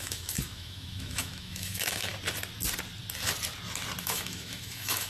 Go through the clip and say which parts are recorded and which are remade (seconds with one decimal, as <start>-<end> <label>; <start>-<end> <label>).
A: 0.0-2.1 remade; 2.1-4.0 recorded; 4.0-5.1 remade